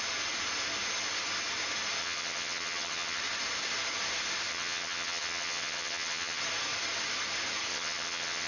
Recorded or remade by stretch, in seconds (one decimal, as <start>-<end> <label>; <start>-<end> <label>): 0.0-2.0 recorded; 2.0-3.2 remade; 3.2-4.5 recorded; 4.5-6.4 remade; 6.4-7.7 recorded; 7.7-8.5 remade